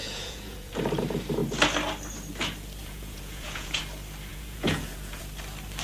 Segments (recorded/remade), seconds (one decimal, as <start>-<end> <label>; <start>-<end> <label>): 0.0-0.7 remade; 0.7-2.8 recorded; 2.8-3.8 remade; 3.8-4.3 recorded; 4.3-5.2 remade; 5.2-5.8 recorded